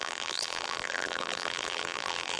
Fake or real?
fake